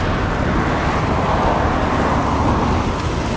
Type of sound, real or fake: real